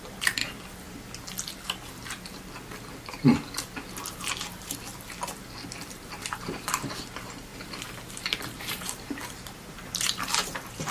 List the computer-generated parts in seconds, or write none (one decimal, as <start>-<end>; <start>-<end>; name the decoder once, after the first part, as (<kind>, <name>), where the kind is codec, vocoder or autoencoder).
0.0-0.4 (vocoder, BigVGAN v2); 4.1-4.9; 5.7-7.5; 8.1-10.9